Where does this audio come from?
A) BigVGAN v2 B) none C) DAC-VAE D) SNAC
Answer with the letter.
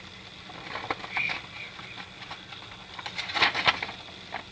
B